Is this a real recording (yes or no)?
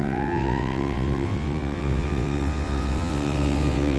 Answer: no